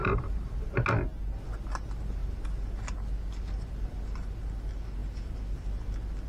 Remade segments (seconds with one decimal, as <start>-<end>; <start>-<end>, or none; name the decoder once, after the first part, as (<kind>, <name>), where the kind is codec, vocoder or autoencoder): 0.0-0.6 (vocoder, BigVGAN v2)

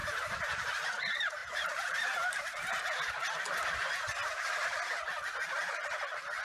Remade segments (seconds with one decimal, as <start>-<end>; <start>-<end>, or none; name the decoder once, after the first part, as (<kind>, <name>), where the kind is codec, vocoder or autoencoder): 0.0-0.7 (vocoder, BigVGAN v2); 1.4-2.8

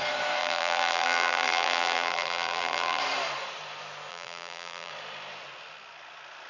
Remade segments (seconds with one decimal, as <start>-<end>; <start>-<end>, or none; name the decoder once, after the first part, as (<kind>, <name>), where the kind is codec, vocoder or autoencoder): 0.4-3.0 (vocoder, BigVGAN v2); 4.1-4.9

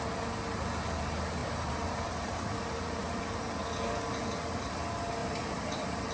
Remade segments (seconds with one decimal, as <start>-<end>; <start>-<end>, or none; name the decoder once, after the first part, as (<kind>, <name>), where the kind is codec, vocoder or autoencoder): 1.4-3.2 (vocoder, BigVGAN v2); 5.2-6.1

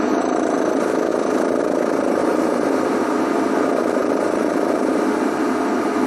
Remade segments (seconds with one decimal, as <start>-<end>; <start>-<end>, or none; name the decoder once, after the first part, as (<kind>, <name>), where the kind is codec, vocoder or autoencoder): 2.2-2.8 (vocoder, BigVGAN v2); 4.0-4.9

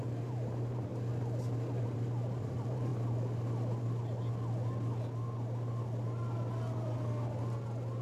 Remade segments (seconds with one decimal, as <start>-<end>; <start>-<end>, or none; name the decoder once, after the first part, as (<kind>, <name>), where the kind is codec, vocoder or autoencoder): 0.0-0.9 (vocoder, BigVGAN v2); 1.8-2.9